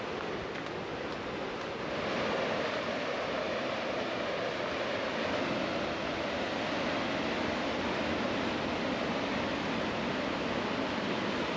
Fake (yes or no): no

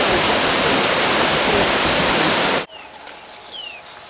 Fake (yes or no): no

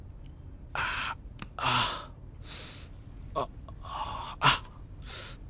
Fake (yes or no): no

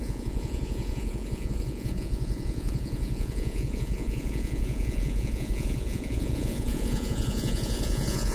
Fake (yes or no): yes